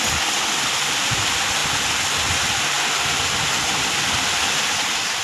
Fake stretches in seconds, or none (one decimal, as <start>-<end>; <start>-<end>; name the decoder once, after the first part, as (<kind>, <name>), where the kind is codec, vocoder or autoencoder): none